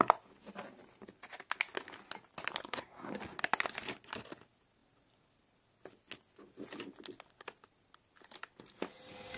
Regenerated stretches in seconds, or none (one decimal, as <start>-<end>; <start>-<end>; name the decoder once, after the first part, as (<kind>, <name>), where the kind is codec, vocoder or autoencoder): 2.6-3.2 (codec, SNAC)